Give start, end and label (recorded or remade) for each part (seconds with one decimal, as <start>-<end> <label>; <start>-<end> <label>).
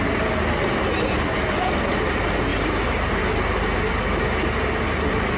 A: 0.0-5.4 recorded